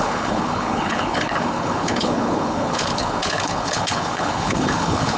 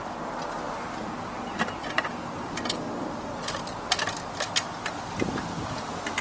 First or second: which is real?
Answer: second